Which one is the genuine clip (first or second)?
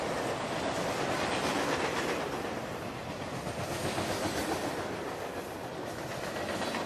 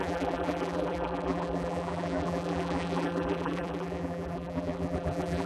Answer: first